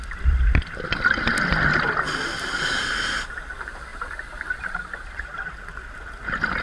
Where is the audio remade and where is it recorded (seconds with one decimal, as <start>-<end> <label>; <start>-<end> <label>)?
0.0-3.9 recorded; 3.9-5.5 remade; 5.5-6.6 recorded